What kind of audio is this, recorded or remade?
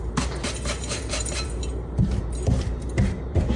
remade